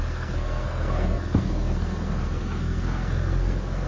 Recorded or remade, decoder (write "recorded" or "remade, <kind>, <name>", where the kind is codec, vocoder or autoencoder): remade, codec, SNAC